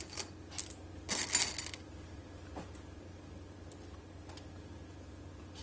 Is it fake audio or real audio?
real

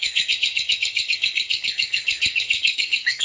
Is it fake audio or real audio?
fake